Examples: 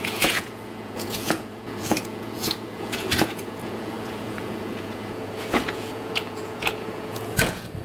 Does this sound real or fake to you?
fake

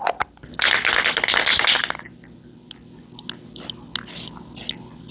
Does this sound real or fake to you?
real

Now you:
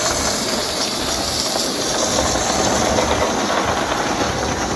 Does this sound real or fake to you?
real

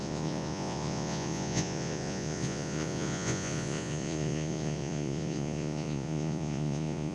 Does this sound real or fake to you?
fake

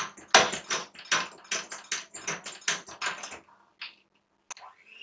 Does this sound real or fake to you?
real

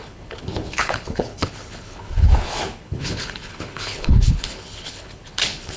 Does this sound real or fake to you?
fake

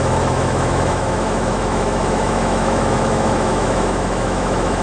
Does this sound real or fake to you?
fake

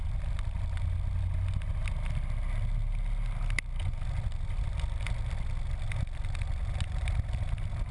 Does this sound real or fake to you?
real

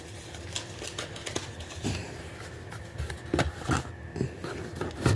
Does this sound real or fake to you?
real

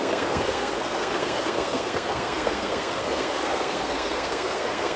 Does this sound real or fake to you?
fake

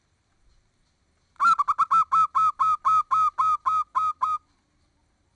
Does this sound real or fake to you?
real